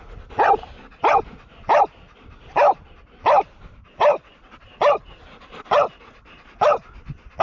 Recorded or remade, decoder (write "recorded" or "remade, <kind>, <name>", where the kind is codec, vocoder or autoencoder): recorded